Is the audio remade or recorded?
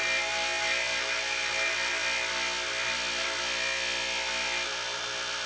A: recorded